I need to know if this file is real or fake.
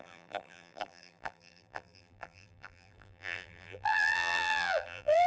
fake